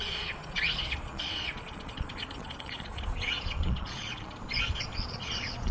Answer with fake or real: fake